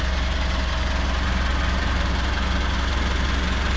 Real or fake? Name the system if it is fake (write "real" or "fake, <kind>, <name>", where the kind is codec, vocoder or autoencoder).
real